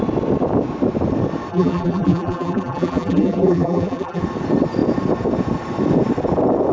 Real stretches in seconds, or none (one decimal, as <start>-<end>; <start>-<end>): 0.0-1.5; 4.2-6.7